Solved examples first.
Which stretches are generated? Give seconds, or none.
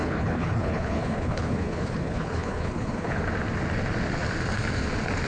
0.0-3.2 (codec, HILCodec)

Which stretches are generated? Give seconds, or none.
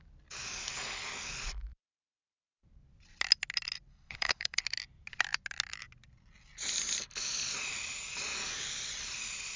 3.9-4.6 (codec, HILCodec)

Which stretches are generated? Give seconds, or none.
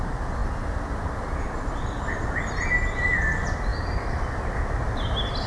none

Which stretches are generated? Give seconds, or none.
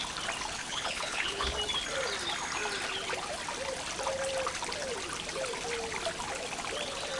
0.6-1.5 (codec, HILCodec)